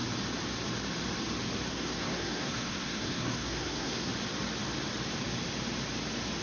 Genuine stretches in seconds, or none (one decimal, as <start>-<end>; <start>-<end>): 0.0-1.7; 4.1-6.4